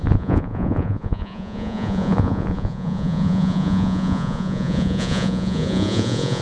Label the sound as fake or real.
fake